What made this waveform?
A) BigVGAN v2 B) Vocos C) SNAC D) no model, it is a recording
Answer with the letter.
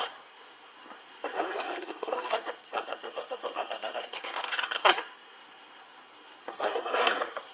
C